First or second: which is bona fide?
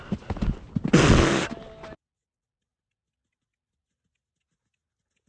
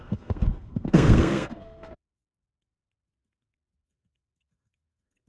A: first